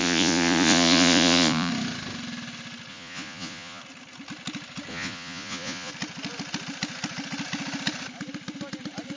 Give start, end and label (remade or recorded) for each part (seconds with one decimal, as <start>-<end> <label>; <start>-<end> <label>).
0.0-1.7 remade; 1.7-2.9 recorded; 2.9-3.8 remade; 3.8-4.9 recorded; 4.9-5.9 remade; 5.9-9.2 recorded